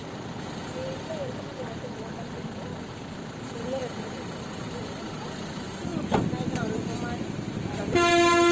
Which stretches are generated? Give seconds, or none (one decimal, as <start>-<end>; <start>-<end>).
none